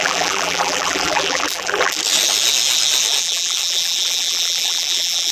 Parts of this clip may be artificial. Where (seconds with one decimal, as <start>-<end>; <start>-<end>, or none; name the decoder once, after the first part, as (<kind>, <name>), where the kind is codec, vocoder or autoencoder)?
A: 0.0-2.0 (vocoder, BigVGAN v2); 3.2-5.3